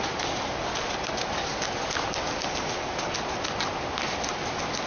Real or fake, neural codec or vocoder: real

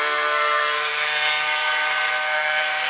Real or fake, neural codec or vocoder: fake, codec, SNAC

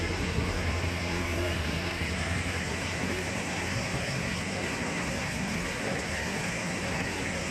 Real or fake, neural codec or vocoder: fake, codec, SNAC